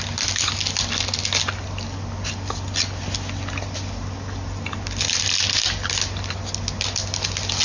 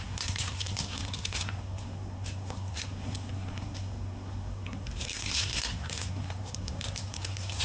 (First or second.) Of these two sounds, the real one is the first